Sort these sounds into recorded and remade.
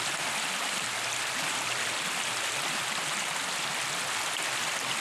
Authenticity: recorded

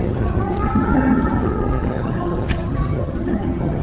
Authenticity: remade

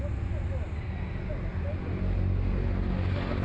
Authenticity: recorded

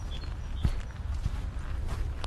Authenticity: remade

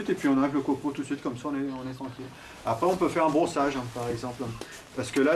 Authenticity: recorded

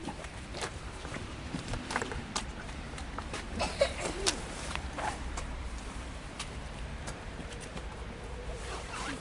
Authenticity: remade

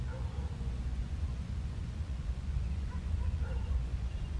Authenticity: remade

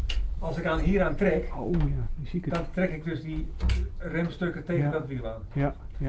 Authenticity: recorded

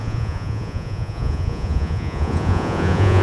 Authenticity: remade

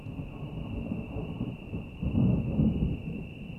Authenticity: remade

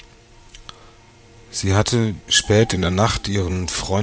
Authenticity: remade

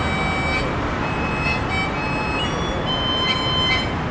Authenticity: recorded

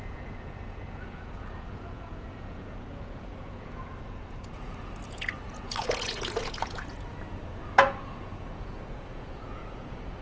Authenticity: remade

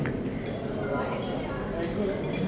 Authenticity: recorded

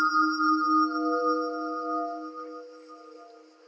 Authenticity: recorded